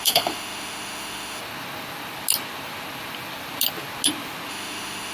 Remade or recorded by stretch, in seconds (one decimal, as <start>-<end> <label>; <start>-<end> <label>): 0.0-1.4 remade; 1.4-4.5 recorded; 4.5-5.1 remade